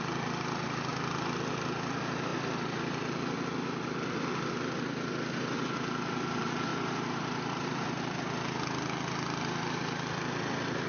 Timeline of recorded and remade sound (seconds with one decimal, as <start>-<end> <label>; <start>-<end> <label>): 0.0-6.7 recorded; 6.7-8.2 remade; 8.2-10.9 recorded